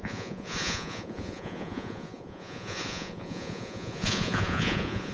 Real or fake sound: fake